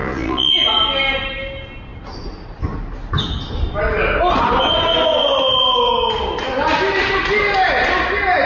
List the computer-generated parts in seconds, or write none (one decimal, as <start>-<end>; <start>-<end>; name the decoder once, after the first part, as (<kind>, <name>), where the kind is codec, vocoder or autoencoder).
0.0-0.5 (vocoder, Vocos)